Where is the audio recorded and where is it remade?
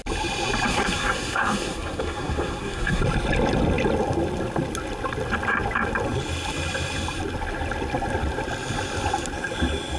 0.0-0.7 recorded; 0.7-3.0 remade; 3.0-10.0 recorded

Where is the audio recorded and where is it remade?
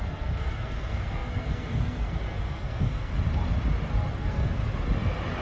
0.0-3.1 remade; 3.1-4.1 recorded; 4.1-4.6 remade; 4.6-5.4 recorded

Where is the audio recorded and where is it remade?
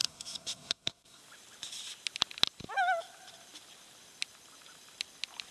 0.0-1.2 remade; 1.2-5.5 recorded